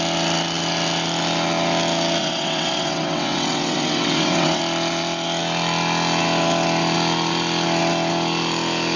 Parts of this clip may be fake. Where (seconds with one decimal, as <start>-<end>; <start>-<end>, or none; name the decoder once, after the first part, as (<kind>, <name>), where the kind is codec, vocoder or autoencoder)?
2.2-4.6 (vocoder, WaveNeXt)